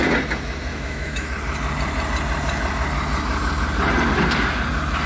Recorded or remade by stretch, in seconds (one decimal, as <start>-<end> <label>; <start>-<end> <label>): 0.0-0.7 recorded; 0.7-1.3 remade; 1.3-5.1 recorded